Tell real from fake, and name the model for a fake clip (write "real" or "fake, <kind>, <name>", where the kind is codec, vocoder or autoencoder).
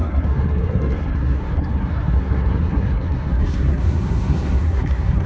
fake, codec, SNAC